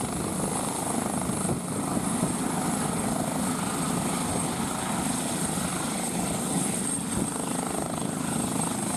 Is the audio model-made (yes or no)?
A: no